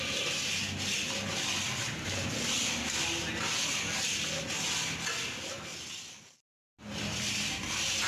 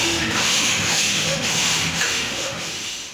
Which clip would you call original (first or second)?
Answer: first